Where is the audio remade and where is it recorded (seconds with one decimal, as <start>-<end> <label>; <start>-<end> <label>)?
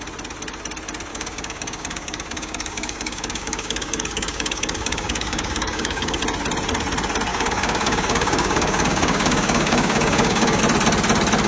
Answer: 0.0-1.1 recorded; 1.1-6.2 remade; 6.2-7.3 recorded; 7.3-10.6 remade; 10.6-11.5 recorded